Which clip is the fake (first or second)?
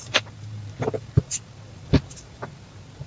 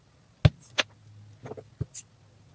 first